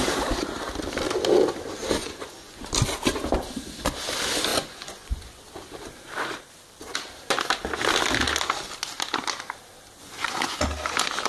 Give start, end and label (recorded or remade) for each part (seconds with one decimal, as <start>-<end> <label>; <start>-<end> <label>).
0.0-2.0 recorded; 2.0-2.6 remade; 2.6-4.5 recorded; 4.5-5.4 remade; 5.4-10.0 recorded; 10.0-10.6 remade; 10.6-11.3 recorded